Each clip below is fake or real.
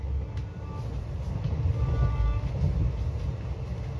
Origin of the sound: real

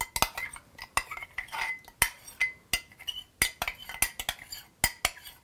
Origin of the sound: real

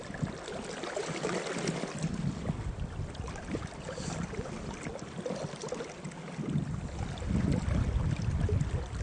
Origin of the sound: real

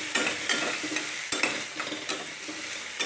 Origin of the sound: real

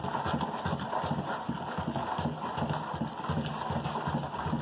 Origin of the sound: real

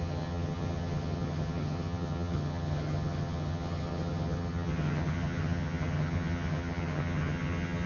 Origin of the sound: fake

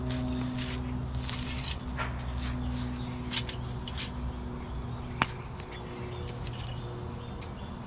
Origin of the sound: real